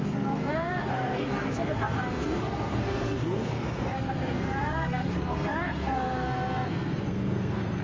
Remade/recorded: remade